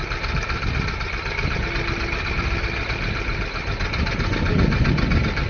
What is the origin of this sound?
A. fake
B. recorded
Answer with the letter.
B